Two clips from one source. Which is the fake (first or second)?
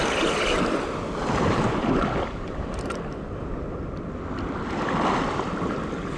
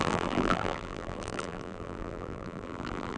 second